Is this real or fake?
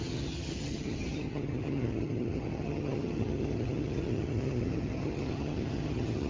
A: fake